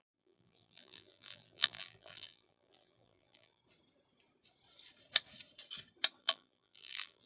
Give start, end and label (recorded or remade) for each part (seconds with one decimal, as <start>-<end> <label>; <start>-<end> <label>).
0.0-3.6 remade; 3.6-6.2 recorded; 6.2-7.3 remade